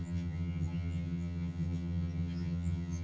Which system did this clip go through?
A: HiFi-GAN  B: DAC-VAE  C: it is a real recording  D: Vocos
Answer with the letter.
A